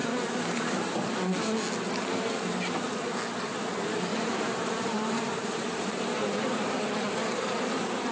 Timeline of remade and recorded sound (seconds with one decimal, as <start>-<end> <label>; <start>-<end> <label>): 0.0-0.9 remade; 0.9-4.1 recorded; 4.1-6.7 remade; 6.7-8.1 recorded